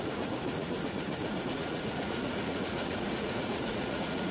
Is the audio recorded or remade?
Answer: remade